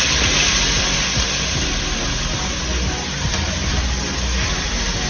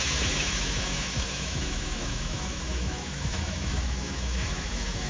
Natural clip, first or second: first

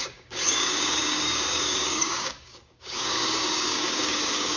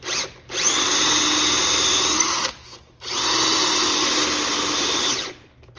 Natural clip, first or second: second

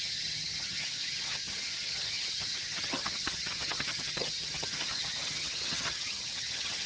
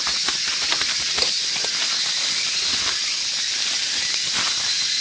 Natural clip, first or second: second